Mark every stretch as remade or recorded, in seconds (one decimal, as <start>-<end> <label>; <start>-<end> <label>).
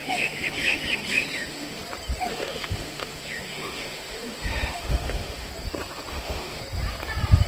0.0-1.8 remade; 1.8-2.3 recorded; 2.3-5.5 remade; 5.5-6.1 recorded; 6.1-6.6 remade; 6.6-7.5 recorded